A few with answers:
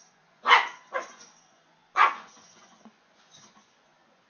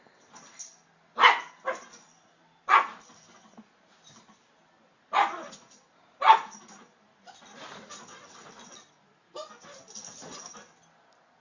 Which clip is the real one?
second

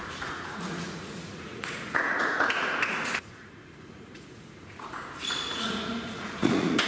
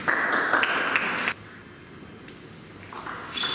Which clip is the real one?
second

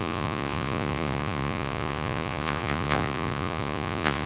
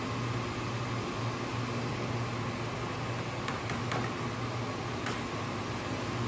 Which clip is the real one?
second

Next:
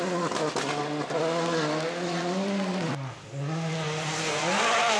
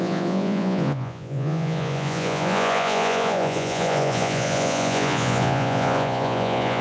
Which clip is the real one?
first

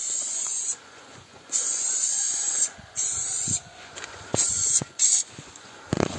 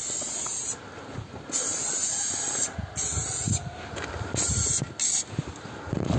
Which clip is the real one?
second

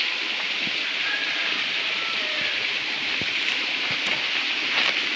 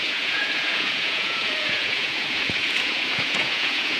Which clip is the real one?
first